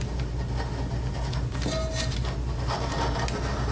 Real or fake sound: real